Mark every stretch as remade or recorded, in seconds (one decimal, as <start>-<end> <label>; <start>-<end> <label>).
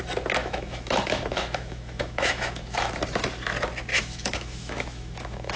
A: 0.0-0.4 recorded; 0.4-2.9 remade; 2.9-3.9 recorded; 3.9-5.6 remade